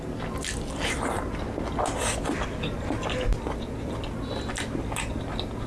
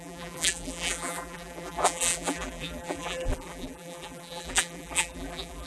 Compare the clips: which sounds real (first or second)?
first